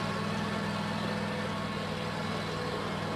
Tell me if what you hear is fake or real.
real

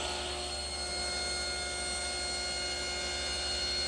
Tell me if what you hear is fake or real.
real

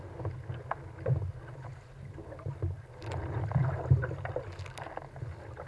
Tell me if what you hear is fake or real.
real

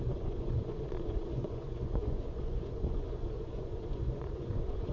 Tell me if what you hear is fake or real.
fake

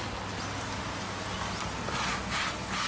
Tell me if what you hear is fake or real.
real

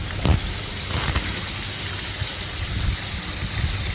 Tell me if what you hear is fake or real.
real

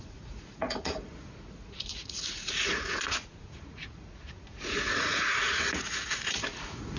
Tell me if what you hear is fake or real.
fake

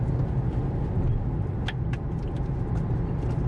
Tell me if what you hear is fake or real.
real